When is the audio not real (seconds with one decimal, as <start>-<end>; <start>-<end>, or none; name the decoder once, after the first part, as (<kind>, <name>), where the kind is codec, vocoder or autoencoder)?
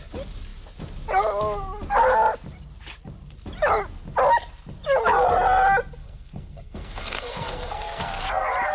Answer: 6.0-8.2 (codec, SNAC)